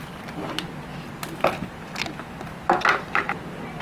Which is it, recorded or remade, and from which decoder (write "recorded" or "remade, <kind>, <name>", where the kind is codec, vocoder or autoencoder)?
recorded